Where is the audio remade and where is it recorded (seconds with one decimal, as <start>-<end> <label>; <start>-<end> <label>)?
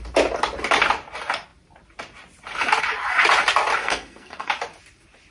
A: 0.0-3.8 recorded; 3.8-4.5 remade; 4.5-5.3 recorded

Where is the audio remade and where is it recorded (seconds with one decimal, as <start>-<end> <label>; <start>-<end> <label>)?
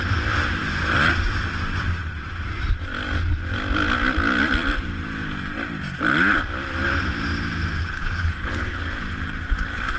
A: 0.0-7.8 recorded; 7.8-8.8 remade; 8.8-10.0 recorded